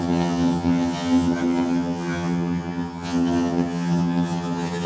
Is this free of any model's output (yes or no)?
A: no